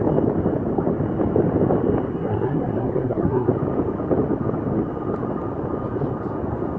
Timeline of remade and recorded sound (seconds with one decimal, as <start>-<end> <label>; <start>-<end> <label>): 0.0-2.1 recorded; 2.1-3.5 remade; 3.5-6.8 recorded